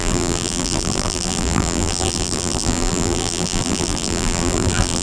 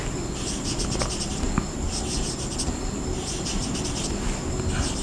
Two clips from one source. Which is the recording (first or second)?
second